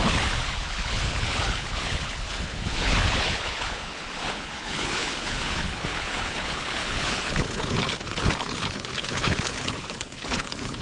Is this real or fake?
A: fake